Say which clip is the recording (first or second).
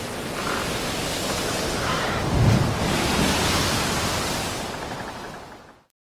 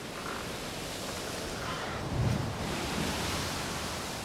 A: first